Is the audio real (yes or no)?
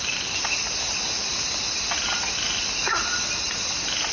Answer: yes